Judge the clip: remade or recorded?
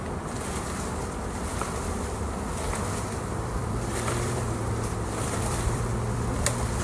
remade